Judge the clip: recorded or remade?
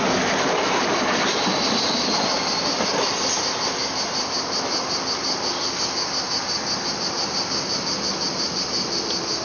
recorded